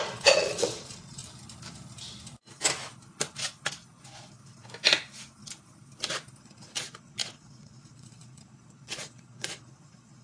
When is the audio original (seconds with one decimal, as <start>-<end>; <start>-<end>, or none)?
1.2-6.4